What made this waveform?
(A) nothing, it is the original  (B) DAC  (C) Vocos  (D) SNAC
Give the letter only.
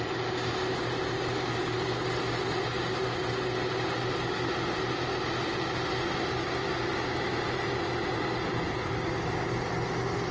A